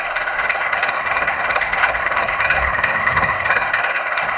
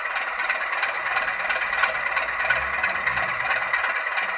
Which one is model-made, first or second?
first